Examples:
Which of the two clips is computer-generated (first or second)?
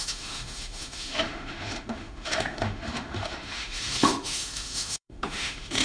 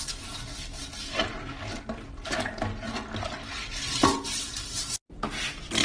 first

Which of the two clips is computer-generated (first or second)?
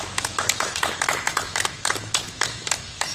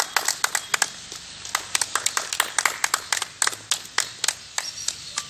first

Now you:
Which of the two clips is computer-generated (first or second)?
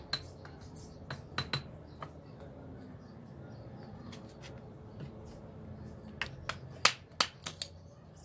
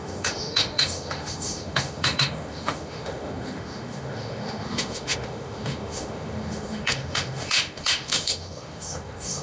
second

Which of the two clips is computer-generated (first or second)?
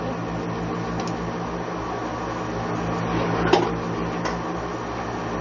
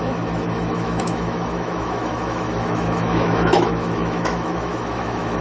second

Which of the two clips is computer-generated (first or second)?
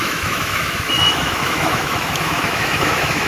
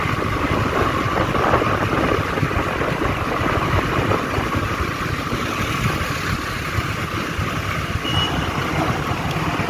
first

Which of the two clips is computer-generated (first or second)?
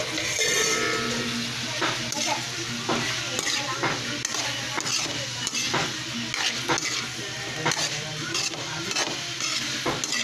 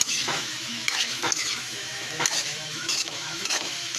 second